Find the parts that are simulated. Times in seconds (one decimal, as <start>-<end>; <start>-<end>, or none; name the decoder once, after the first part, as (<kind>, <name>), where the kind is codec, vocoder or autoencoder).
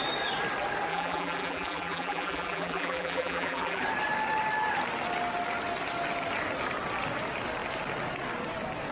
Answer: 0.9-3.8 (vocoder, BigVGAN v2)